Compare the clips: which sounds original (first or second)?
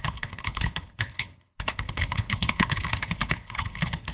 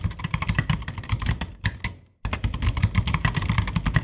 second